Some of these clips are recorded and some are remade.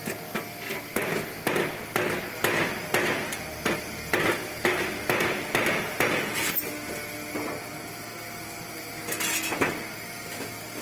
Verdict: recorded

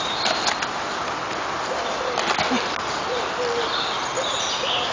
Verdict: recorded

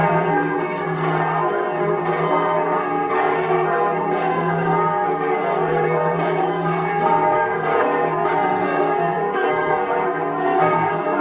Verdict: remade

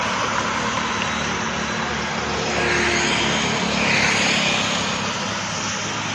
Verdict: recorded